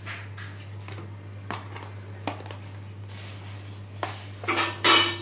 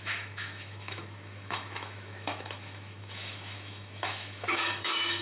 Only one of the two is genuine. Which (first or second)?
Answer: first